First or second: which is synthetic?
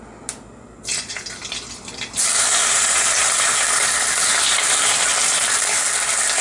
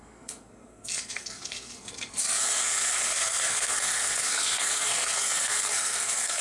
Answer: second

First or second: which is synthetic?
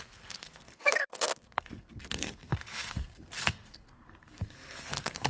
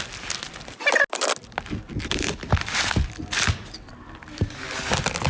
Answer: first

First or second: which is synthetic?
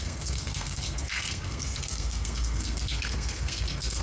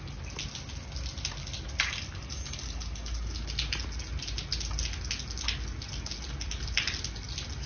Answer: first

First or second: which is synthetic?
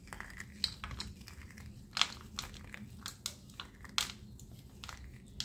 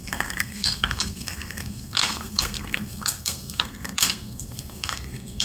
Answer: second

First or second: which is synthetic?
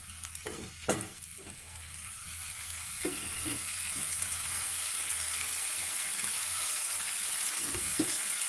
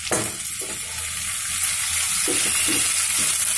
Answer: first